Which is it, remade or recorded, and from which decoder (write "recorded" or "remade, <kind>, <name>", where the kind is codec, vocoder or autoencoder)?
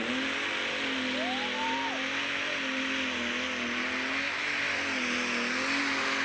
recorded